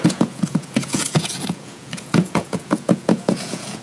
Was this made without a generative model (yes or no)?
no